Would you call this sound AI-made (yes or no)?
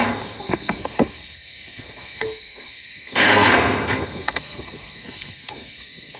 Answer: yes